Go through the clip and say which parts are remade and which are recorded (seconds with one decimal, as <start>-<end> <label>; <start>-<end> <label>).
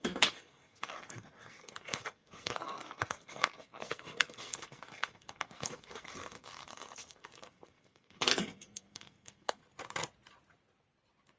0.0-9.6 remade; 9.6-11.4 recorded